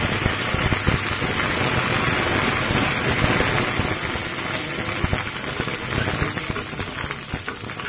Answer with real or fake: real